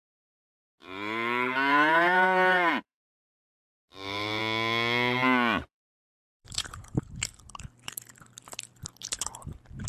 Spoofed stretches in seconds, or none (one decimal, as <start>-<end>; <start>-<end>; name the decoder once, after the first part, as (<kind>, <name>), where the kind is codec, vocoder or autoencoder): 0.6-4.4 (vocoder, BigVGAN v2); 5.6-7.4